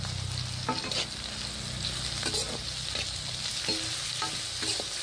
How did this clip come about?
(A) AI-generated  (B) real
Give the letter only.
B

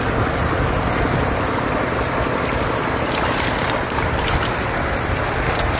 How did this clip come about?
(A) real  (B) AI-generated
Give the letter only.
A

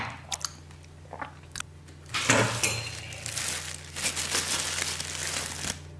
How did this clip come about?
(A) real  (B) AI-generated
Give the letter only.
A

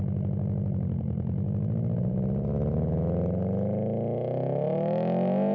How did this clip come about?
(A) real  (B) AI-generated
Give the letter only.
A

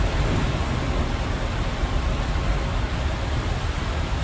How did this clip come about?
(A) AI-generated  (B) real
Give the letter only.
A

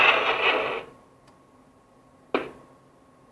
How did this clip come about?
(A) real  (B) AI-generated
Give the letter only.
A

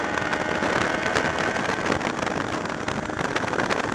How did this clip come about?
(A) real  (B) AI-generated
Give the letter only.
A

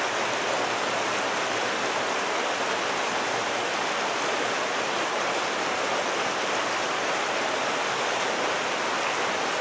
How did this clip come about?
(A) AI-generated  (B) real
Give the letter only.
B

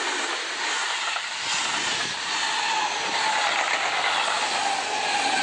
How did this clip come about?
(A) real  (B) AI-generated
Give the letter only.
A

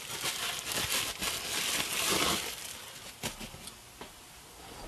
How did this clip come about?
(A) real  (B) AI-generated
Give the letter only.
A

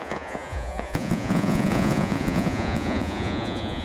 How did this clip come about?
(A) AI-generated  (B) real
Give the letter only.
A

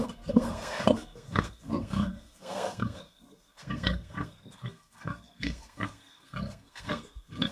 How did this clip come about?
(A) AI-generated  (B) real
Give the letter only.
A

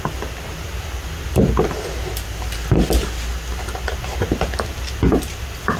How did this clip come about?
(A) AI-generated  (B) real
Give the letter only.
B